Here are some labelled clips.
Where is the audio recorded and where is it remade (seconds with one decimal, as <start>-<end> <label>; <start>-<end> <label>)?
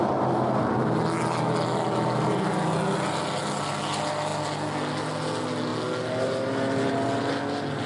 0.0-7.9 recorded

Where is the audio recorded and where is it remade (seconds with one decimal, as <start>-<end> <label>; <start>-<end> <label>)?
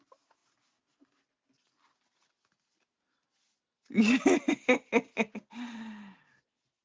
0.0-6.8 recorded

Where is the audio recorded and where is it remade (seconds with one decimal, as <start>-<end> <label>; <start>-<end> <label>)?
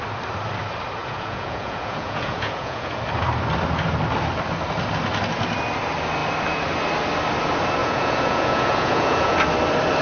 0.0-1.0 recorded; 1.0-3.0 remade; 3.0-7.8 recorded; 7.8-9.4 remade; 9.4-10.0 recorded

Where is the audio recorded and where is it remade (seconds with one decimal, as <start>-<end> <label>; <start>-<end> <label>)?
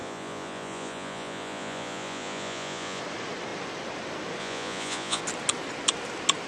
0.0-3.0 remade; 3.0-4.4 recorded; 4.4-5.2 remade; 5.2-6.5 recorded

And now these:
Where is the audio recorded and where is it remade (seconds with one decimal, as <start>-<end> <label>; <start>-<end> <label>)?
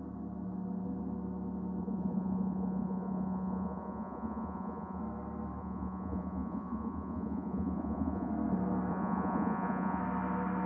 0.0-1.8 recorded; 1.8-5.0 remade; 5.0-5.6 recorded; 5.6-8.3 remade; 8.3-8.9 recorded; 8.9-10.0 remade; 10.0-10.7 recorded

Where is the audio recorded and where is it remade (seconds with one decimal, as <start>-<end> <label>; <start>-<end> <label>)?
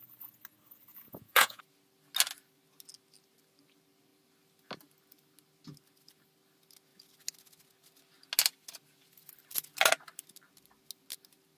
0.0-0.9 recorded; 0.9-1.6 remade; 1.6-11.6 recorded